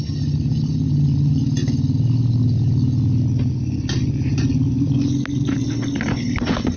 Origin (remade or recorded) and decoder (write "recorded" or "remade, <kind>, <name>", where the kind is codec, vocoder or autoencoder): recorded